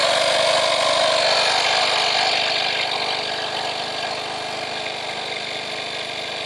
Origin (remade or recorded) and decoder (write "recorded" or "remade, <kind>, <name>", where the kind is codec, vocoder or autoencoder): recorded